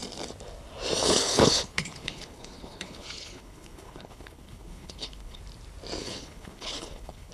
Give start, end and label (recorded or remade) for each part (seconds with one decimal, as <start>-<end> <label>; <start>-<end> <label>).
0.0-1.0 recorded; 1.0-5.4 remade; 5.4-6.0 recorded; 6.0-7.3 remade